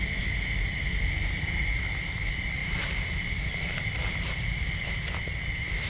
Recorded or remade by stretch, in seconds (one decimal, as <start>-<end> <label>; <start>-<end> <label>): 0.0-2.6 recorded; 2.6-4.6 remade; 4.6-5.9 recorded